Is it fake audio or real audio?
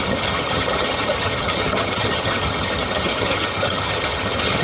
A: fake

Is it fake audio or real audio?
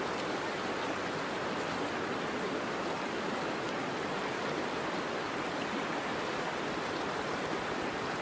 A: real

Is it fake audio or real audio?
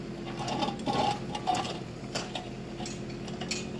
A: real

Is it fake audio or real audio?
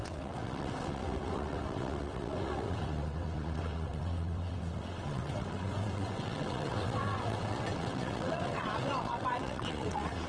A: fake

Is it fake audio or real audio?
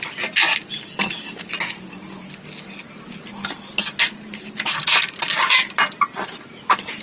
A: real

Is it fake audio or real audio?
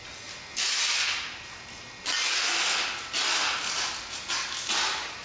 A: real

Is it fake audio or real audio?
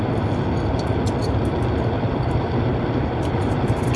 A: real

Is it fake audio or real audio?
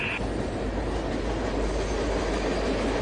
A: real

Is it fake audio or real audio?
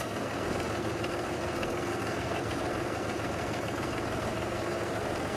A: fake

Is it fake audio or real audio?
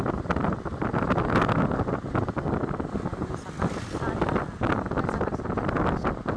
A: real